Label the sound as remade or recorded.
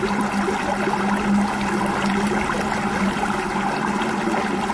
recorded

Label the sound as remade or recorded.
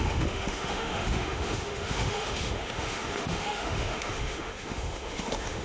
remade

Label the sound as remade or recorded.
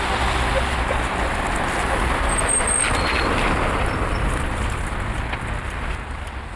recorded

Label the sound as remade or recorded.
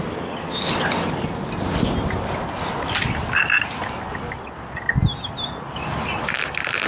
recorded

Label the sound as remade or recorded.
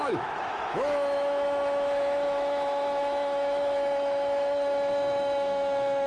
remade